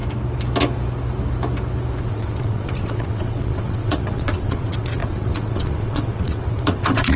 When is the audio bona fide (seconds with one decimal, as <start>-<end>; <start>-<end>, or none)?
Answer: 0.0-2.0